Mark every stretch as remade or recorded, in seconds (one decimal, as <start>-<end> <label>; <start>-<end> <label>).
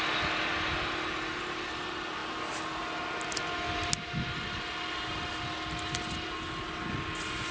0.0-7.5 recorded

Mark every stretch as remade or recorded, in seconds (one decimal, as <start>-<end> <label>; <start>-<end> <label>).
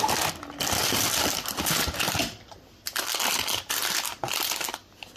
0.0-5.2 recorded